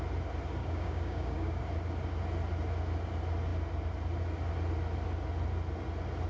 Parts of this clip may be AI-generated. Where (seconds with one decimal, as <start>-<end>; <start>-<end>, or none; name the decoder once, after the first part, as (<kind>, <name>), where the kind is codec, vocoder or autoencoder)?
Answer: 0.6-1.6 (codec, DAC)